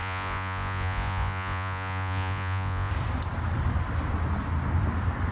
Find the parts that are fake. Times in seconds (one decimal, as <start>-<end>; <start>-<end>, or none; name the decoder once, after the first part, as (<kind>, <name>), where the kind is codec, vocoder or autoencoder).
0.0-2.9 (vocoder, Vocos)